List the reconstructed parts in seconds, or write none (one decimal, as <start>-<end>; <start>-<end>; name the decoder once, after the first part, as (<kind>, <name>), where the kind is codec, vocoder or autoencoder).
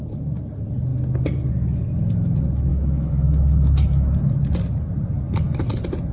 2.7-4.3 (autoencoder, DAC-VAE)